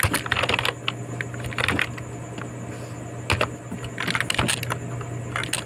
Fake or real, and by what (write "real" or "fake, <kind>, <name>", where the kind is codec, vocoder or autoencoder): real